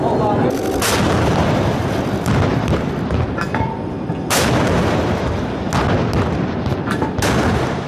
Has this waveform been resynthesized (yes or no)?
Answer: no